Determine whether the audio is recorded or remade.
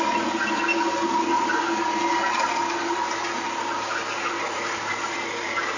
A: recorded